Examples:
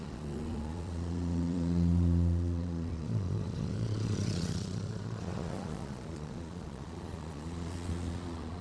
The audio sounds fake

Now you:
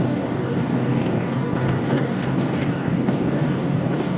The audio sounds fake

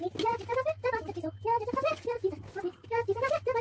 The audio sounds real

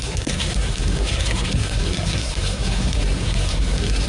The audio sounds fake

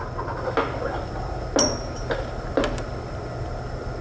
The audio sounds real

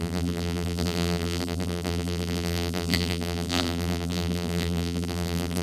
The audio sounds fake